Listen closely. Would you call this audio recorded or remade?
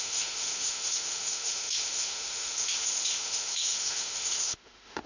remade